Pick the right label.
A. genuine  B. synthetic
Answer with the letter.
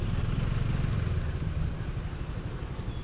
A